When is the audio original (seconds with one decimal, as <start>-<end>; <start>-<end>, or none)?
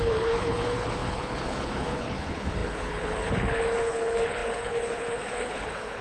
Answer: none